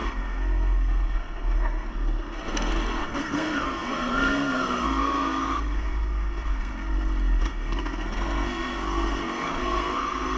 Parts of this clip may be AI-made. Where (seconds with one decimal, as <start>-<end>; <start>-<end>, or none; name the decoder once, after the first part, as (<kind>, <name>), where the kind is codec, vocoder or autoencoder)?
0.0-6.7 (codec, SNAC); 7.4-10.4